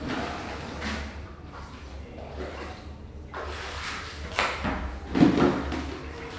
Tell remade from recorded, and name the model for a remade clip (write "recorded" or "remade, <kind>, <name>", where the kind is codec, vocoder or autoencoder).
recorded